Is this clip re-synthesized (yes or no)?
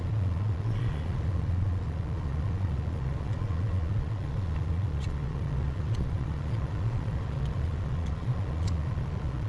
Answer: yes